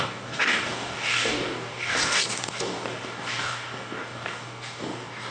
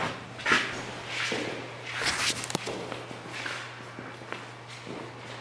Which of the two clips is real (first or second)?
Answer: second